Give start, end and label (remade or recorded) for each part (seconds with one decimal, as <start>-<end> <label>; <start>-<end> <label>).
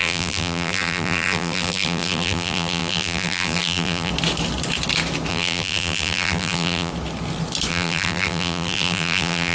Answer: 0.0-4.1 remade; 4.1-5.3 recorded; 5.3-6.9 remade; 6.9-7.7 recorded; 7.7-9.5 remade